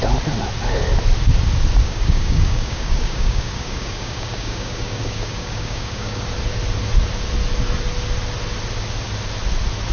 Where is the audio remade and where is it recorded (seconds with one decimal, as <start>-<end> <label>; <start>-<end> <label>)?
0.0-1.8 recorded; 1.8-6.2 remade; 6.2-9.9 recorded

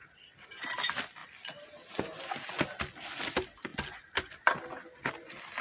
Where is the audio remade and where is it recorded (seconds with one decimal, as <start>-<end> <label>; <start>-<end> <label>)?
0.0-3.7 remade; 3.7-5.6 recorded

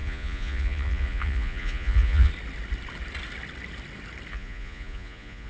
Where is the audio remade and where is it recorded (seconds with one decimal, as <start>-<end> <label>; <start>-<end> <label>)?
0.0-2.3 remade; 2.3-4.3 recorded; 4.3-5.5 remade